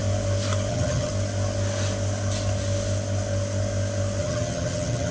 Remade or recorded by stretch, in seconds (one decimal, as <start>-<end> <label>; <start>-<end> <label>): 0.0-0.7 recorded; 0.7-1.1 remade; 1.1-4.2 recorded; 4.2-5.1 remade